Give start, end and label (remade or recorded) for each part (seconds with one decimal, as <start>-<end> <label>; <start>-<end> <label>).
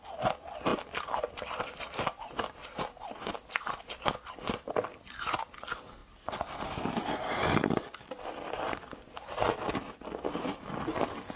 0.0-0.7 recorded; 0.7-3.8 remade; 3.8-11.4 recorded